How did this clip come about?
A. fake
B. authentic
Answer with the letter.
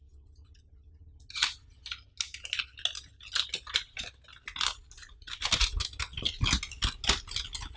B